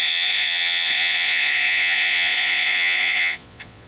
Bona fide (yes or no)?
no